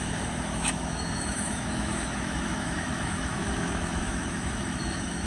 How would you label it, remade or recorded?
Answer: remade